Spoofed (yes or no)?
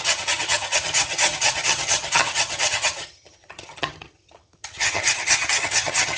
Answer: yes